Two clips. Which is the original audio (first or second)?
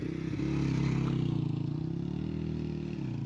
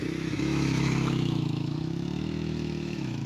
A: first